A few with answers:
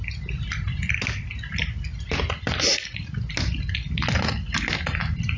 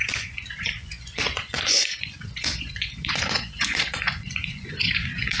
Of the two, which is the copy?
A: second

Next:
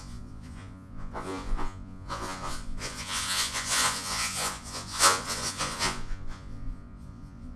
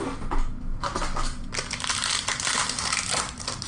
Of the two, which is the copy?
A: first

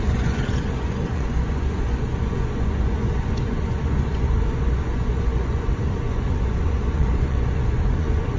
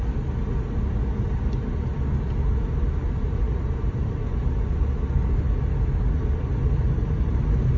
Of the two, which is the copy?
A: first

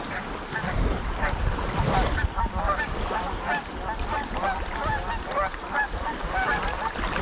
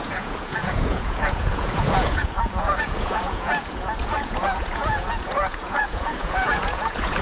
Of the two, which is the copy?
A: second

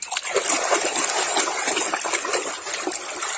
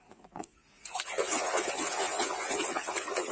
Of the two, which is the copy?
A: second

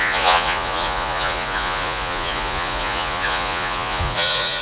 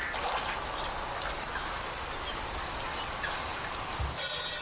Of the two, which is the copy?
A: first